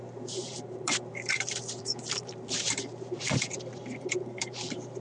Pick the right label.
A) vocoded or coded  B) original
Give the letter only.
A